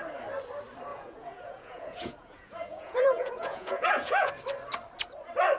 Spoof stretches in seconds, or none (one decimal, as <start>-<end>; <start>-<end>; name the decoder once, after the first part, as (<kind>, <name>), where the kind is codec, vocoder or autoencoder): 0.9-4.3 (vocoder, Vocos)